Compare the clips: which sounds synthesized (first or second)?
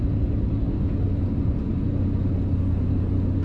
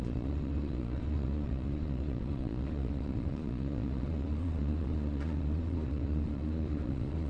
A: second